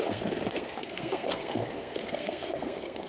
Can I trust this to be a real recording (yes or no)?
no